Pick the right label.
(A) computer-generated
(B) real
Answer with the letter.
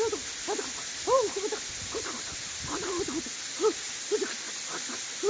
B